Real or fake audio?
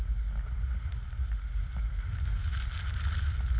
real